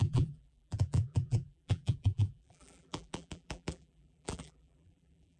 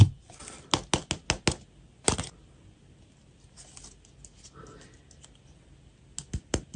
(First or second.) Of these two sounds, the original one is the second